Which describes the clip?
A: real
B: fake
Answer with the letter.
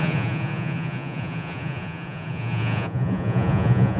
B